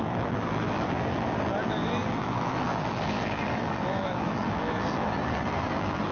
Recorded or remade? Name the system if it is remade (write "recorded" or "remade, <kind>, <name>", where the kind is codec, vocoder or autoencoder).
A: remade, vocoder, BigVGAN v2